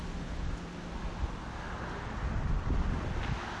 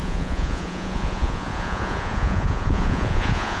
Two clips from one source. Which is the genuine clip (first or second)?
first